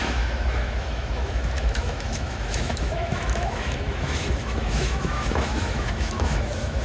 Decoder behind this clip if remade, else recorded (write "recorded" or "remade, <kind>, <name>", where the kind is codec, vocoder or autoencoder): remade, autoencoder, DAC-VAE